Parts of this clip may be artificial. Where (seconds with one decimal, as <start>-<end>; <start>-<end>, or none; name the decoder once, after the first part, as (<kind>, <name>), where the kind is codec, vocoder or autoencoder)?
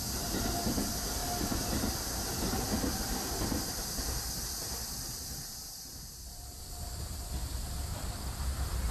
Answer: none